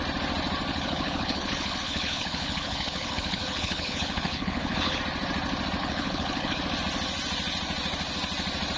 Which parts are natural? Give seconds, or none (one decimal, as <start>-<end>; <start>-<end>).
0.0-0.7; 5.0-5.8; 6.6-8.8